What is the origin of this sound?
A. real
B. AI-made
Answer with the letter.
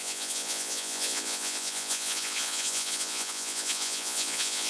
B